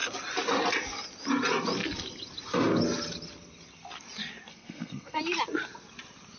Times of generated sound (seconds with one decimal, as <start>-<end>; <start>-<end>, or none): 4.5-5.2